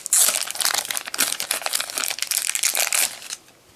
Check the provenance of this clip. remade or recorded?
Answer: recorded